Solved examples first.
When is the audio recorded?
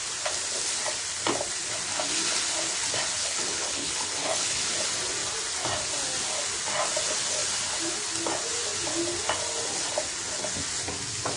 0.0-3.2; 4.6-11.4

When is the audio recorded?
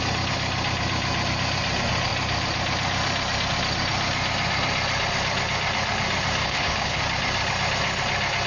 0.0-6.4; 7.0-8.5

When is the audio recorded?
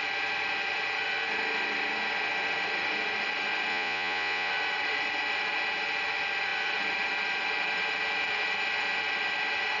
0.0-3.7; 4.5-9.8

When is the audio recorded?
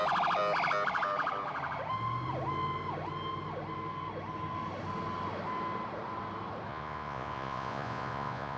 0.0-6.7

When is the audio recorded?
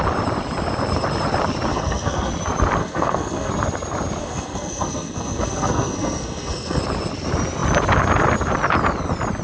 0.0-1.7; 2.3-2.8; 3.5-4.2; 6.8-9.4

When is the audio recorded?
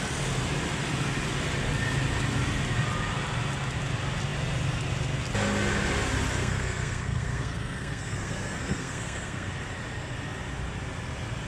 0.0-6.4; 9.5-11.5